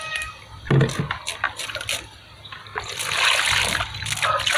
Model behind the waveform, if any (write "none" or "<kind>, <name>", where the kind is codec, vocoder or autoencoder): none